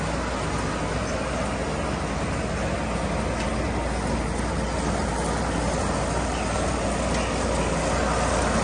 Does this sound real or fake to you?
real